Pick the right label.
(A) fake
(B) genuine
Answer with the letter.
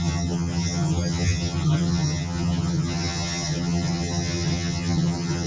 A